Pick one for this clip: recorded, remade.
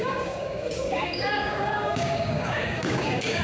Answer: remade